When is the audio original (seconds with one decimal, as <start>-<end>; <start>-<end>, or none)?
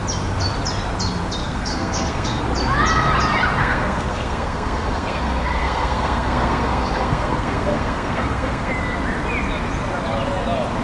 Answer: 0.0-1.4; 2.4-3.6; 8.7-10.8